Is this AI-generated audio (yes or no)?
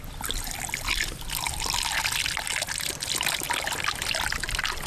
no